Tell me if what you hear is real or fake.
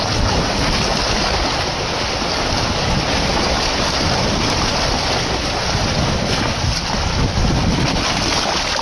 real